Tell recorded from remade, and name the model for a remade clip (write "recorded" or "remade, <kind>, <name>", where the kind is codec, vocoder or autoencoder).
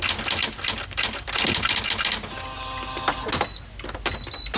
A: recorded